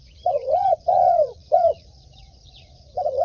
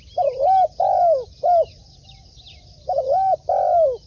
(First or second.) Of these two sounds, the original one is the second